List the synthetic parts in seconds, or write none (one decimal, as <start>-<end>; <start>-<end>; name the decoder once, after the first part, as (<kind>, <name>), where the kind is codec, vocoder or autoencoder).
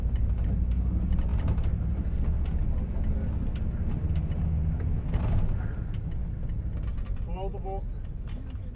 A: 1.3-1.8 (vocoder, BigVGAN v2)